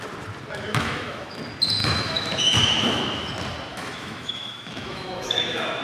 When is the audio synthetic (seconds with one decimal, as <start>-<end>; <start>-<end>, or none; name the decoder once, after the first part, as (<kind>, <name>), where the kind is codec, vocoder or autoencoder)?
0.7-1.4 (autoencoder, DAC-VAE); 1.8-3.3; 3.7-5.8